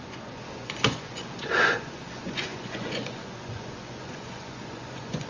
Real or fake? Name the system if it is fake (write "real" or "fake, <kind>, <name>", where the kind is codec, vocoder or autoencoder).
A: fake, vocoder, Vocos